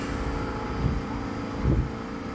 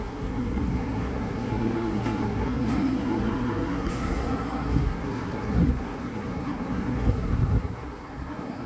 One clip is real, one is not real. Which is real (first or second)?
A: first